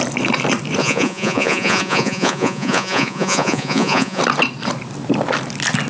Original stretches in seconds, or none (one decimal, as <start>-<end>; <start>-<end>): 0.0-0.8; 4.2-5.9